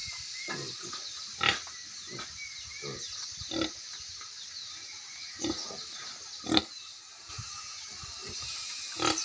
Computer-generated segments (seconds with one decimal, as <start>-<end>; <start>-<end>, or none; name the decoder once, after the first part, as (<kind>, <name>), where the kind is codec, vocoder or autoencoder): 0.0-0.8 (vocoder, BigVGAN v2); 6.6-7.3; 8.2-8.7

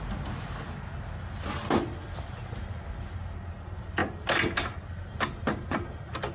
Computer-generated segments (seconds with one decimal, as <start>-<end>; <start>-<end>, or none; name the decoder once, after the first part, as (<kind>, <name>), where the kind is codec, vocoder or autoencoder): none

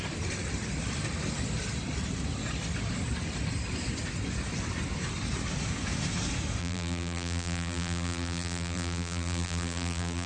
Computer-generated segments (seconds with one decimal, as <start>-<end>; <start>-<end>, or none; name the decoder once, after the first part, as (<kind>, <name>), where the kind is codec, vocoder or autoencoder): 6.6-10.3 (vocoder, BigVGAN v2)

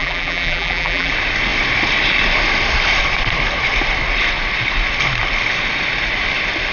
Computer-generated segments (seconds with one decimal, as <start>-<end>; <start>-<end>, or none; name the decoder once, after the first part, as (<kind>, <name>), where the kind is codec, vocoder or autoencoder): 0.0-1.1 (vocoder, BigVGAN v2)

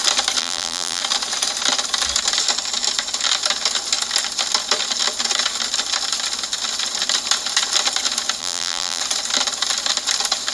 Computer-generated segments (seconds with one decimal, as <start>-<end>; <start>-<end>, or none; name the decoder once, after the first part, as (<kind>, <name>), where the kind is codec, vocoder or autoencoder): 0.4-1.0 (vocoder, BigVGAN v2); 8.4-9.0

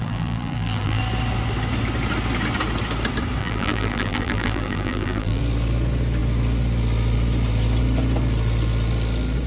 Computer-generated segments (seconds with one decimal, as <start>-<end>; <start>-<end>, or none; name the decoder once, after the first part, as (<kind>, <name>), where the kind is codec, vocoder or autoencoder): 0.0-1.0 (vocoder, BigVGAN v2); 3.4-5.4

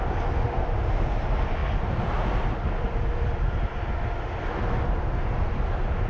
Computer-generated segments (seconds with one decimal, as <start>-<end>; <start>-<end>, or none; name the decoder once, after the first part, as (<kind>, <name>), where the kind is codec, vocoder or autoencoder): none

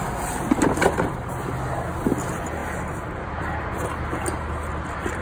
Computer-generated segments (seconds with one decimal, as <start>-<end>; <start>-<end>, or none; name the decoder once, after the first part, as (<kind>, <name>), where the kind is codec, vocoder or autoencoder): 0.8-1.5 (vocoder, BigVGAN v2)